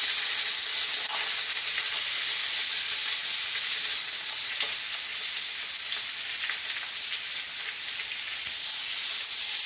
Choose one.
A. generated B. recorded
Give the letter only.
B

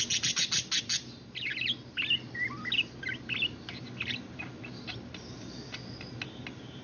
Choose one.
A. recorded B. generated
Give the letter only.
A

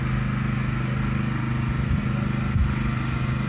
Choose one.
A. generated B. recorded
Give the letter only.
B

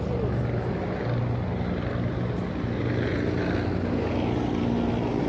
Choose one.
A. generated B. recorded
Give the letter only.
B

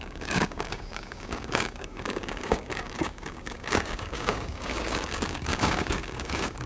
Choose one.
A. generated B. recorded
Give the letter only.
A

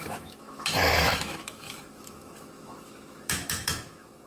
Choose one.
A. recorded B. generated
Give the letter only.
B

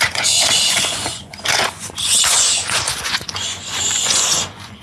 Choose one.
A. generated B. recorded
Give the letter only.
A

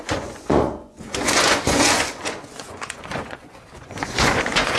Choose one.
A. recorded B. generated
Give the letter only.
B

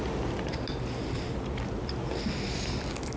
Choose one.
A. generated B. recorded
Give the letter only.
B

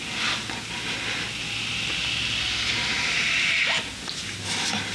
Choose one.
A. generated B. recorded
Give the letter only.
B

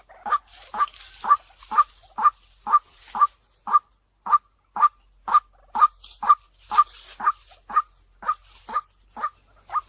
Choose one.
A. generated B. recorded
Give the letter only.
B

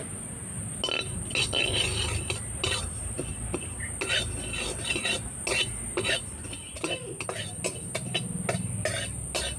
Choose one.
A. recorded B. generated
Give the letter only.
A